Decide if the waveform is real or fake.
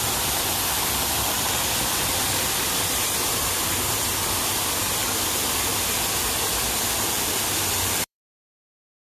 fake